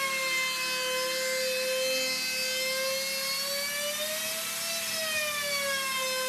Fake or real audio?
real